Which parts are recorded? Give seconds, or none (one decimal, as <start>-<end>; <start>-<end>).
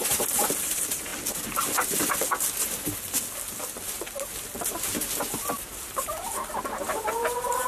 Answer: 1.1-5.7